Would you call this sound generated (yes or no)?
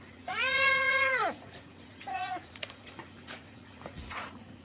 yes